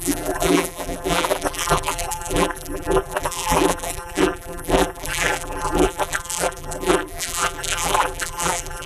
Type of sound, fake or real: fake